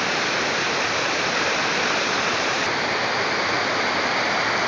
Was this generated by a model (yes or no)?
yes